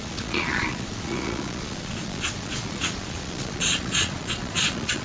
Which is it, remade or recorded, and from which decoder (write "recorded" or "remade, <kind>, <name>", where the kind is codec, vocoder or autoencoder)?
remade, vocoder, Vocos